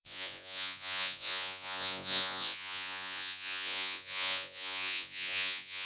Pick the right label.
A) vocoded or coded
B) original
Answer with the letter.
A